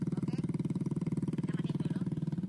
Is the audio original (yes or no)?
no